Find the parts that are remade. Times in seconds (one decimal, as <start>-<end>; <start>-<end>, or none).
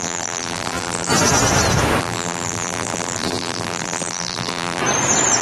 0.0-1.1; 2.0-4.8